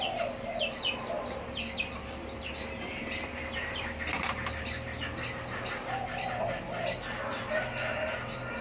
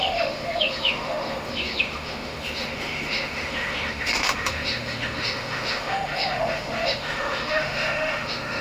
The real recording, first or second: first